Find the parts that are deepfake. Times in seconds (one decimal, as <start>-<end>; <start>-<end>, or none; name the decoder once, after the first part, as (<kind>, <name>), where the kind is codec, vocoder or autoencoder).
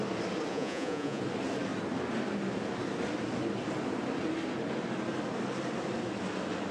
0.5-1.2 (vocoder, Vocos)